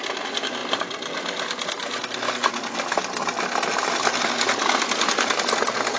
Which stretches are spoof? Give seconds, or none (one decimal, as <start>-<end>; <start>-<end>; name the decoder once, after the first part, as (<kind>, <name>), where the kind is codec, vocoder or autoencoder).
none

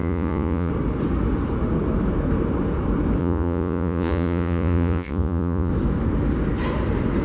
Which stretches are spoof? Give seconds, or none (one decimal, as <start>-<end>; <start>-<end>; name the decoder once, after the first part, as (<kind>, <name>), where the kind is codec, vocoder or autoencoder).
0.0-0.7 (vocoder, Vocos); 3.2-5.7